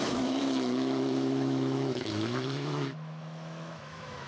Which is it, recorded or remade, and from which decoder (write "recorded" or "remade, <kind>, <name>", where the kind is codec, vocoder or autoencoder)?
remade, autoencoder, DAC-VAE